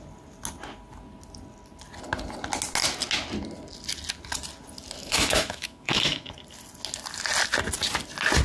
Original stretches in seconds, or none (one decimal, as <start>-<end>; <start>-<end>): 0.0-5.0; 6.3-8.4